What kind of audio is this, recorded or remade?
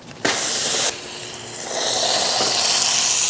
recorded